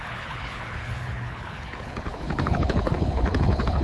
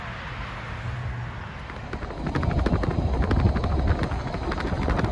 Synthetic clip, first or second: first